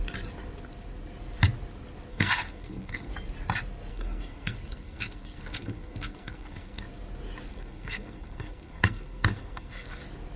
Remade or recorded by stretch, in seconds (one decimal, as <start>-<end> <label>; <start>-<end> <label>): 0.0-2.1 recorded; 2.1-3.1 remade; 3.1-3.9 recorded; 3.9-6.8 remade; 6.8-7.5 recorded; 7.5-10.0 remade; 10.0-10.4 recorded